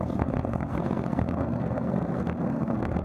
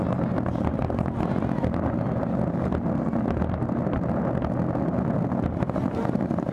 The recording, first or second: second